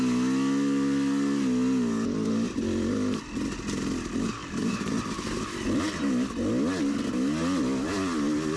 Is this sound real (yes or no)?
yes